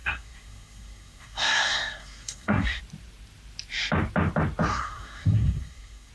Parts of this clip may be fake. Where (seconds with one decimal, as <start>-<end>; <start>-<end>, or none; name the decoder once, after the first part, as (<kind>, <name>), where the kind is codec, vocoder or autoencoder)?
0.0-2.8 (codec, SNAC); 4.7-6.1